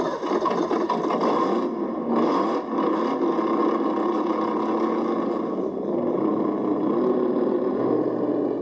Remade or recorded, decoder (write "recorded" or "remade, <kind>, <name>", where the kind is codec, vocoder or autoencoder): recorded